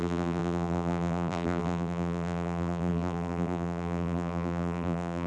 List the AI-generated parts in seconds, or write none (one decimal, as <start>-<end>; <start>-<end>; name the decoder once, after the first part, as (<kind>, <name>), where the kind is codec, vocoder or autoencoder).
0.0-5.3 (vocoder, BigVGAN v2)